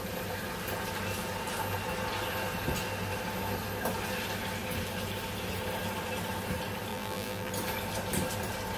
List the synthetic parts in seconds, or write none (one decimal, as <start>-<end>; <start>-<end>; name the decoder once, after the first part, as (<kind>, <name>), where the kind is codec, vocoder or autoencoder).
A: 6.9-7.5 (vocoder, BigVGAN v2)